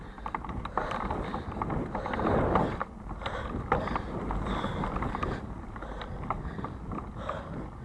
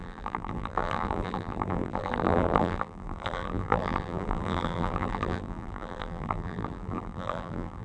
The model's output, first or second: second